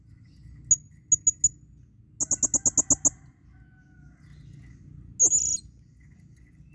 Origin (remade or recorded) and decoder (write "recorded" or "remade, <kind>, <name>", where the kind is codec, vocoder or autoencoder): recorded